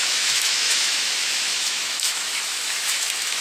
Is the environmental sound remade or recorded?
remade